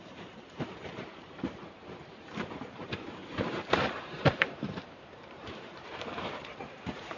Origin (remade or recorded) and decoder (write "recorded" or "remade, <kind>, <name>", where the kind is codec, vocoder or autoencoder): remade, vocoder, BigVGAN v2